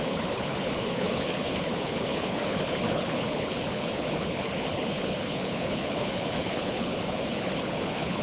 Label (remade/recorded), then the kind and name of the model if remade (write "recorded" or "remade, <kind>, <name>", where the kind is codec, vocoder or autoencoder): remade, codec, HILCodec